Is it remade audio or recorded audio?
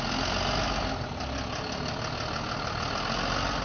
recorded